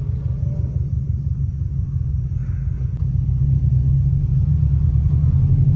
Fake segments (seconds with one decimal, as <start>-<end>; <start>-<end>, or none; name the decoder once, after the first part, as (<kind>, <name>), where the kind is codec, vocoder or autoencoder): 4.3-5.1 (vocoder, Vocos)